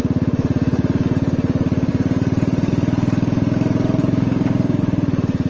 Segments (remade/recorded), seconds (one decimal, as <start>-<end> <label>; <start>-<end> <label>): 0.0-4.0 recorded; 4.0-4.8 remade; 4.8-5.5 recorded